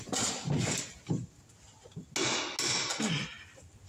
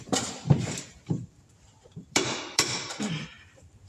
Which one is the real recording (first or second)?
first